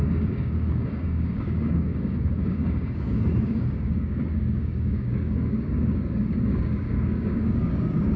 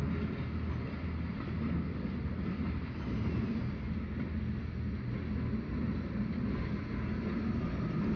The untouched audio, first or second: second